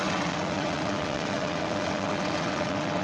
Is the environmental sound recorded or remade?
remade